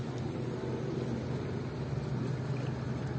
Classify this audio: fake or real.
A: real